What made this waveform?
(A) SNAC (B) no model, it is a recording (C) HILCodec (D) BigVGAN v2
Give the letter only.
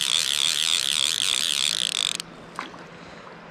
B